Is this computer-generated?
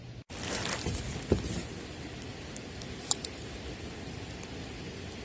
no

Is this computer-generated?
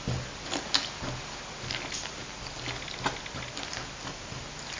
no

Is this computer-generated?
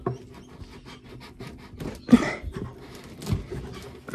no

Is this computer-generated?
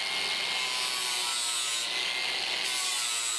no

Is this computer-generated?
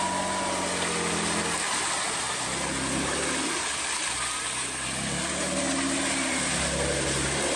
no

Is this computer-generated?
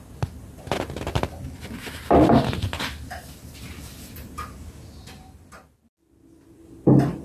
no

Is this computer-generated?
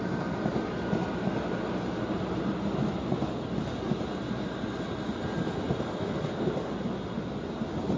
no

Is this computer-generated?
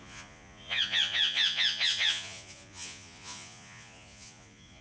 yes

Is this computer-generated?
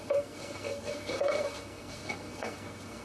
yes